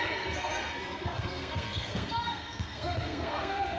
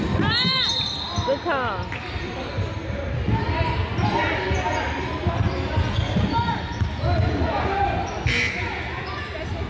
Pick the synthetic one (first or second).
first